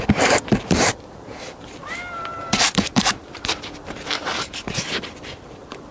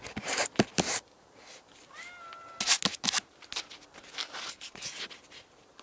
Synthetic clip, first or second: first